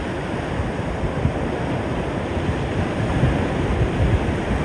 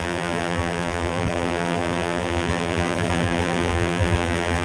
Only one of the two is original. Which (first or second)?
first